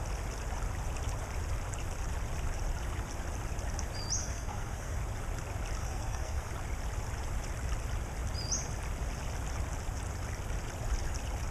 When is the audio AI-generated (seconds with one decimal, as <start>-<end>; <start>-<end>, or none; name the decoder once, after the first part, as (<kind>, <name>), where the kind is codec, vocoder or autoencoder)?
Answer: 4.2-5.0 (codec, SNAC); 5.8-6.5